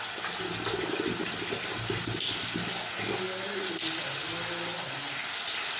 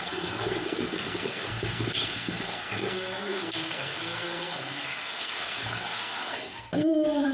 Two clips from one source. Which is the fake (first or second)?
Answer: second